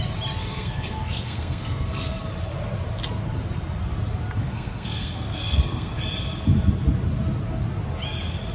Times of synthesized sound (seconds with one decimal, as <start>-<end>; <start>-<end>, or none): 0.4-2.2; 4.4-6.0

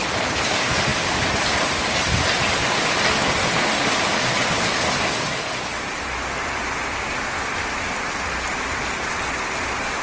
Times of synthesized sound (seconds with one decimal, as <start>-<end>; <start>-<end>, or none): none

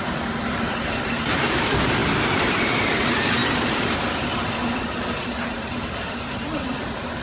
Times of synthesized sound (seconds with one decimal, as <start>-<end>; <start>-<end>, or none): 0.0-2.0; 2.5-7.2

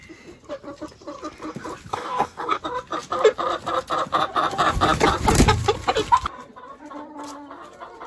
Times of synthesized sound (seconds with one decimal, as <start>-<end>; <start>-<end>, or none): 1.9-2.6